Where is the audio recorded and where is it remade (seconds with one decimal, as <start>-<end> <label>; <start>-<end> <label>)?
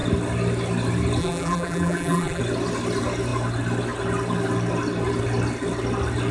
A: 0.0-1.2 recorded; 1.2-2.4 remade; 2.4-6.3 recorded